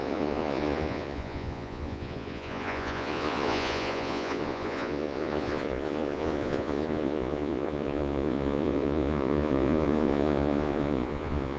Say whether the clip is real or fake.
fake